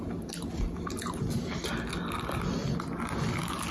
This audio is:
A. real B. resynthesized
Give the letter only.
A